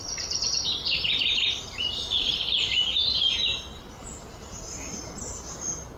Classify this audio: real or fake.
real